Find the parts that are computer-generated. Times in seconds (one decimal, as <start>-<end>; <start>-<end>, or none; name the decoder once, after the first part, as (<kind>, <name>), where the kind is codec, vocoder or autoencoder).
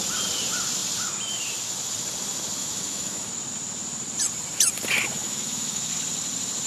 2.6-3.3 (autoencoder, DAC-VAE); 5.2-5.9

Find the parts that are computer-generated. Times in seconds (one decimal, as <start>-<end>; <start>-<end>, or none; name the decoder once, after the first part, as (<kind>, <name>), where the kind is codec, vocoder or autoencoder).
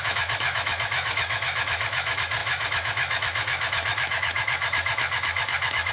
0.0-5.9 (autoencoder, DAC-VAE)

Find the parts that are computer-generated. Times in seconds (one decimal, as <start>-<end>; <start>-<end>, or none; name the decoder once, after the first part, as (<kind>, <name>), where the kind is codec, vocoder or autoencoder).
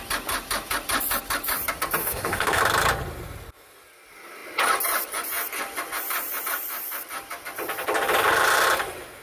2.0-2.6 (autoencoder, DAC-VAE)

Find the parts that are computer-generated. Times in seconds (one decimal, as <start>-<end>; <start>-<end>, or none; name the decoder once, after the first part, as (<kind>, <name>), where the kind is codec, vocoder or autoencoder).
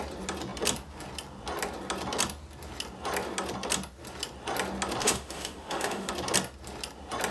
5.0-6.1 (autoencoder, DAC-VAE)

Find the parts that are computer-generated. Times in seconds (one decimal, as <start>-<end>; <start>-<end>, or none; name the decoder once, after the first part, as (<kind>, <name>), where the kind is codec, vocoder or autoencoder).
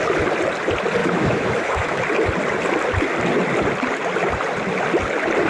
1.0-2.0 (autoencoder, DAC-VAE)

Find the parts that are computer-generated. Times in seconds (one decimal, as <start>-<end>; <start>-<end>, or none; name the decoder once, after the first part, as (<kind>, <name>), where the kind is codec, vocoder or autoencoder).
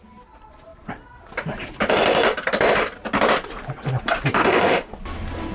4.4-4.9 (autoencoder, DAC-VAE)